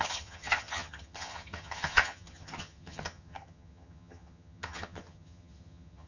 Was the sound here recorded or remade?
remade